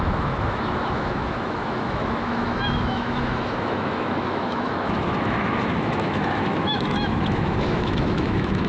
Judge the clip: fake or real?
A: fake